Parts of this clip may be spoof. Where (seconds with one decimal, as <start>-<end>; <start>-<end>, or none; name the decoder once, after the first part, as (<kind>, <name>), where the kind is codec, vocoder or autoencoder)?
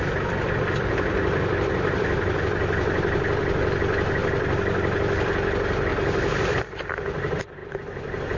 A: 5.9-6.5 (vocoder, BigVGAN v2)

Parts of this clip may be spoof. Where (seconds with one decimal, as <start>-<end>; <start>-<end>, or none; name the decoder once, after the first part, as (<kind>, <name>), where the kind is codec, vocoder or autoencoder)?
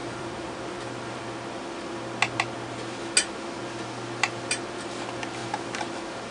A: 0.0-1.2 (vocoder, BigVGAN v2)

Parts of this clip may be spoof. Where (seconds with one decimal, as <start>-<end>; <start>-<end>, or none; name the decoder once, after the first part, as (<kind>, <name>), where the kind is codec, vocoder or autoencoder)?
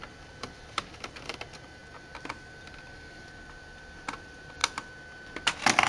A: 0.0-4.6 (vocoder, BigVGAN v2)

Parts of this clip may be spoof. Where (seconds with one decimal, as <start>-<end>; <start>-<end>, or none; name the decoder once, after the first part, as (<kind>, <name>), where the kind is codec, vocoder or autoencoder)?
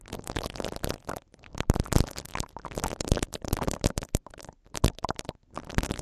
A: none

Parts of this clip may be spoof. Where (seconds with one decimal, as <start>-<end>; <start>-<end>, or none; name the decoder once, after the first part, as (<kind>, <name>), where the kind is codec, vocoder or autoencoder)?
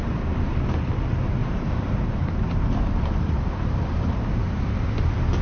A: 1.4-4.6 (vocoder, BigVGAN v2)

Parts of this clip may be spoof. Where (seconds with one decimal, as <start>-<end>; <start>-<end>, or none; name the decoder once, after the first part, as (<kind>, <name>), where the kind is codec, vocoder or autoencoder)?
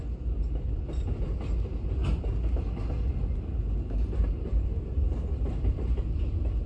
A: none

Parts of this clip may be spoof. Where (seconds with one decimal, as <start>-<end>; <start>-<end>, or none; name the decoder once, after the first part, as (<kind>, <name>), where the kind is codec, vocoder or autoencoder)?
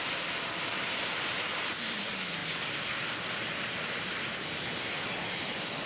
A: 0.7-1.7 (vocoder, BigVGAN v2)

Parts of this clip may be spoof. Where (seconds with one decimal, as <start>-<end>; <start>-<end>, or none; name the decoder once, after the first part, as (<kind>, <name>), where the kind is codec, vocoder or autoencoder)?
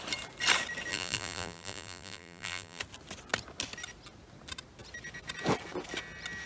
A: 0.9-2.8 (vocoder, BigVGAN v2)